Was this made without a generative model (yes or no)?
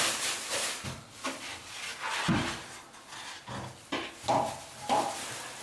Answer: yes